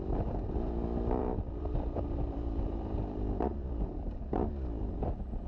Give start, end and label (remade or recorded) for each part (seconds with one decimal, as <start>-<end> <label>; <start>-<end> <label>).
0.0-1.2 recorded; 1.2-4.5 remade; 4.5-5.5 recorded